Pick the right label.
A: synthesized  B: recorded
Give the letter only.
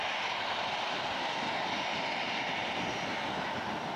B